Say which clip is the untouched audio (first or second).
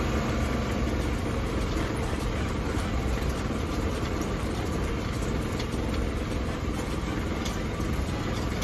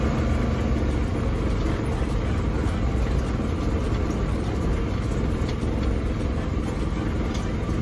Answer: second